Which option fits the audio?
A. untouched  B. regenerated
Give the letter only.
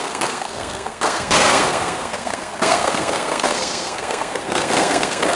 B